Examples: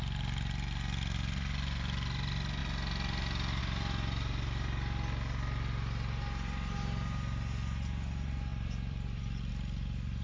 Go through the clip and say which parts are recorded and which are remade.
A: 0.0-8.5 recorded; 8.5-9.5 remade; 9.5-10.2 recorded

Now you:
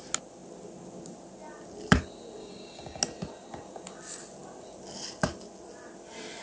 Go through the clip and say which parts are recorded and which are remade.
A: 0.0-2.4 recorded; 2.4-3.0 remade; 3.0-6.4 recorded

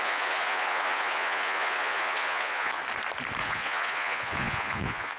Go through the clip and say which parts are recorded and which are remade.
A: 0.0-2.8 remade; 2.8-3.4 recorded; 3.4-5.2 remade

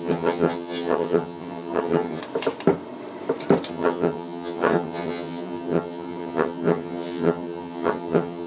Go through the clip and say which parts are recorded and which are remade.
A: 0.0-2.2 remade; 2.2-3.7 recorded; 3.7-8.5 remade

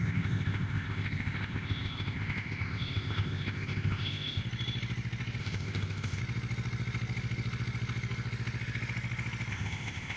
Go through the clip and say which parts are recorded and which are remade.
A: 0.0-4.4 remade; 4.4-5.4 recorded; 5.4-6.2 remade; 6.2-9.5 recorded; 9.5-10.2 remade

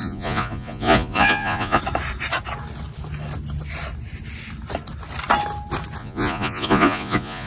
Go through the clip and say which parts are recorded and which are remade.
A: 0.0-1.8 remade; 1.8-6.0 recorded; 6.0-7.5 remade